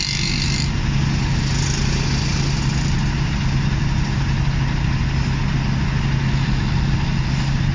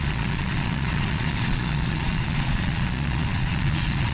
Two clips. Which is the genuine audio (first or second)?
first